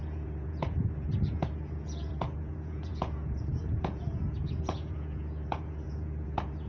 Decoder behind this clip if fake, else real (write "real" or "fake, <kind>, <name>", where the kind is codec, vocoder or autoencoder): fake, vocoder, Vocos